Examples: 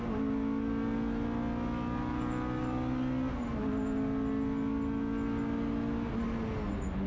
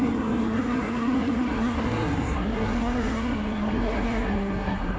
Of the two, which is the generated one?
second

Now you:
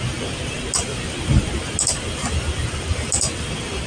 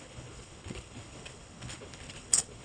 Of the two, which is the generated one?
second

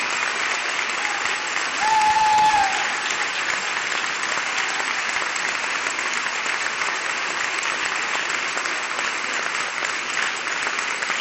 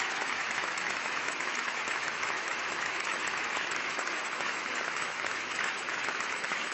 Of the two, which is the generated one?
second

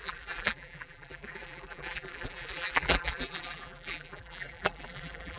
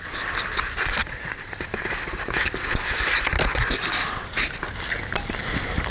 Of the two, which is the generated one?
first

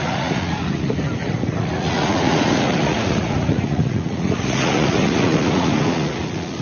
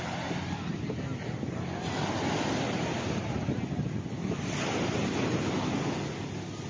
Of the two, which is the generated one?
first